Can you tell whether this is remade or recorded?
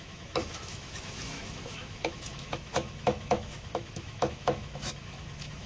remade